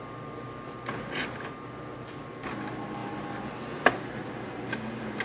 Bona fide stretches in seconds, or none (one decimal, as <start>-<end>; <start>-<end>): 0.0-5.2